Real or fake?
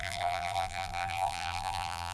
fake